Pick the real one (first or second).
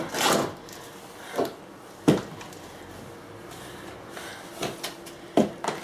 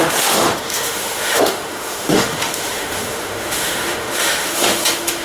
first